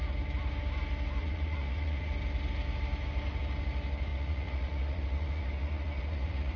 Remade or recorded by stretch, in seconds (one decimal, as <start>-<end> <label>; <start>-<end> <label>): 0.0-1.2 recorded; 1.2-2.1 remade; 2.1-4.1 recorded; 4.1-6.6 remade